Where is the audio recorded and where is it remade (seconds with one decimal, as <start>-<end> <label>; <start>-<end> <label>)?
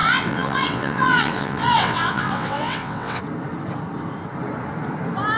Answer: 0.0-3.2 remade; 3.2-5.4 recorded